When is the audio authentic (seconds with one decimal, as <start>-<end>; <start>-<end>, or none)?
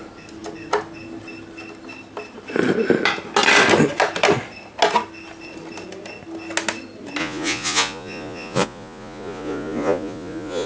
0.0-7.2